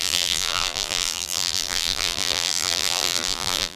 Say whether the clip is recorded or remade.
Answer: remade